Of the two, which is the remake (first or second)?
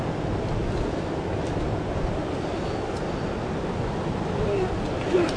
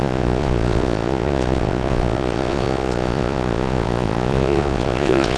second